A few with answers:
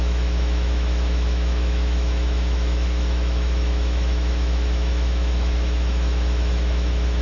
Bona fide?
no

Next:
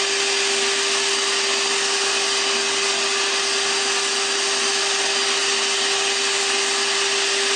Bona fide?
yes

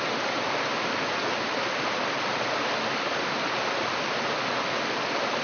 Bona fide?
yes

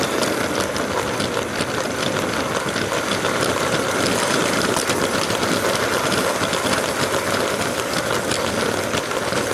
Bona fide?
yes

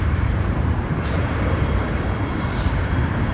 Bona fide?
no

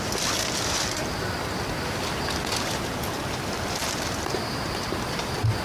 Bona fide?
yes